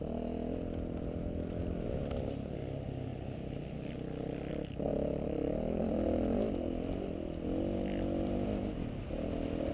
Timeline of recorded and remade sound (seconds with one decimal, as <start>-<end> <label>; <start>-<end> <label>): 0.0-9.7 recorded

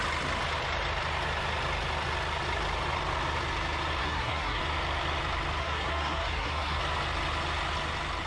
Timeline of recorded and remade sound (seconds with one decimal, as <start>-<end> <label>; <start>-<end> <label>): 0.0-4.0 recorded; 4.0-4.6 remade; 4.6-5.6 recorded; 5.6-6.8 remade; 6.8-8.3 recorded

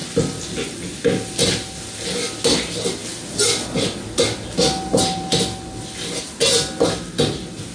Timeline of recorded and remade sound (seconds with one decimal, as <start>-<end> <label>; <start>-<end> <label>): 0.0-7.7 recorded

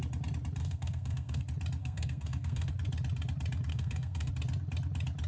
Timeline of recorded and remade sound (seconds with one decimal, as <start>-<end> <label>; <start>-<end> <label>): 0.0-0.6 recorded; 0.6-1.4 remade; 1.4-1.8 recorded; 1.8-2.7 remade; 2.7-3.7 recorded; 3.7-4.3 remade; 4.3-5.3 recorded

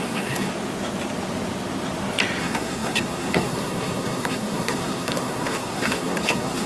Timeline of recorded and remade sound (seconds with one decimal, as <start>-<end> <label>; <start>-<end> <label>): 0.0-0.5 remade; 0.5-2.4 recorded; 2.4-6.7 remade

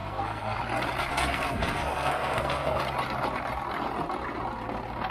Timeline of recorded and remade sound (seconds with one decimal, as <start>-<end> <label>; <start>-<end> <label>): 0.0-0.6 remade; 0.6-1.1 recorded; 1.1-2.8 remade; 2.8-5.1 recorded